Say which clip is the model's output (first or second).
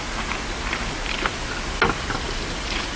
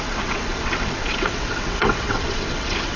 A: second